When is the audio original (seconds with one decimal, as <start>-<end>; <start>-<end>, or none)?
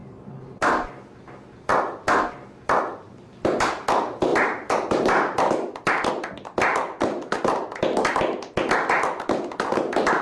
1.1-4.3; 6.1-10.2